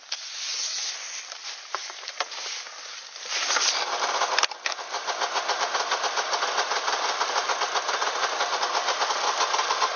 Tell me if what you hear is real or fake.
real